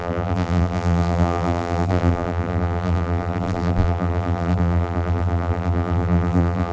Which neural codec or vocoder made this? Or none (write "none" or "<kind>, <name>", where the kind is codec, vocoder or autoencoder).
vocoder, BigVGAN v2